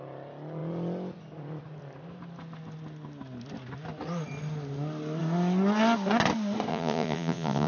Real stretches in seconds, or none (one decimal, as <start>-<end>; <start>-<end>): 0.0-6.7